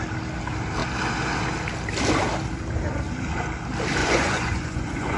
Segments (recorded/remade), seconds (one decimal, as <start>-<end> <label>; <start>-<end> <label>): 0.0-4.0 recorded; 4.0-5.2 remade